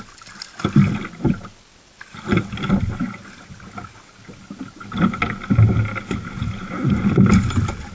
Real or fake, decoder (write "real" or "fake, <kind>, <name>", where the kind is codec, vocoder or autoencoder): real